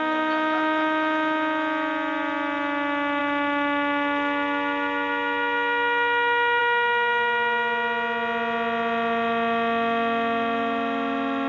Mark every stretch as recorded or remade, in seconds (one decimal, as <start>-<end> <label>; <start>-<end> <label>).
0.0-11.5 recorded